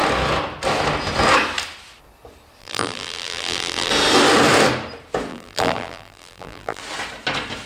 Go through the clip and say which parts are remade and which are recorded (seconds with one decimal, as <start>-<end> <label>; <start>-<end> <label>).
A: 0.0-2.6 recorded; 2.6-3.9 remade; 3.9-5.3 recorded; 5.3-6.8 remade; 6.8-7.7 recorded